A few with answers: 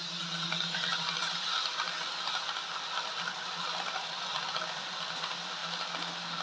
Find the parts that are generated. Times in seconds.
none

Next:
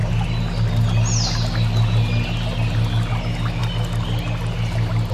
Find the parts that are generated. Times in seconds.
none

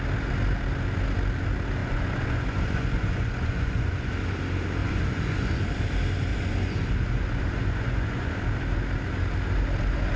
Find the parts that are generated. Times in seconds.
1.8-4.1 (vocoder, Vocos); 4.8-5.6; 6.3-8.3

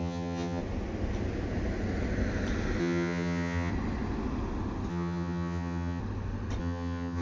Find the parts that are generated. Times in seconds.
0.0-0.6 (vocoder, HiFi-GAN); 2.8-3.7; 4.9-6.0; 6.6-7.2

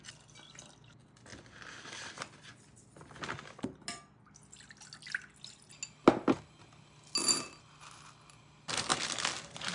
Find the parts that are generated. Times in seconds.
none

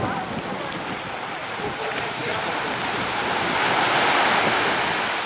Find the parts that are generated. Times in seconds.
1.4-3.4 (vocoder, BigVGAN v2)

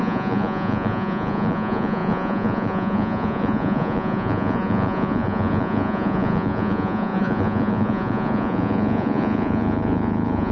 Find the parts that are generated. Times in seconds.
0.0-10.5 (vocoder, Vocos)